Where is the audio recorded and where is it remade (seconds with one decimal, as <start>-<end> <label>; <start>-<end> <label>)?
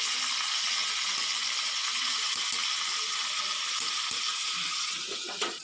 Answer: 0.0-1.8 recorded; 1.8-2.4 remade; 2.4-4.3 recorded; 4.3-5.6 remade